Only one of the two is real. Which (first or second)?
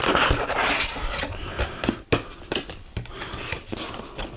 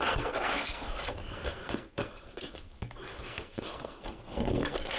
first